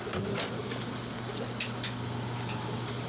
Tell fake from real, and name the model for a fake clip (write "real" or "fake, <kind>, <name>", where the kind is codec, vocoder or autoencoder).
real